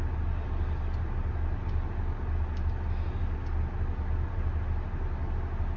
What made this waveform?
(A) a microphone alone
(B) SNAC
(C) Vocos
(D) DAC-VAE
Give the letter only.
A